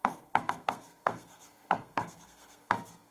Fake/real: fake